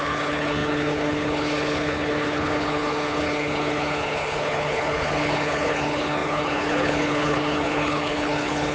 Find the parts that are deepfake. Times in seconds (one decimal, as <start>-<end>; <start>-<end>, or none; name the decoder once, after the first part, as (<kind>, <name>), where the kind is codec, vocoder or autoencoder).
0.0-8.7 (codec, HILCodec)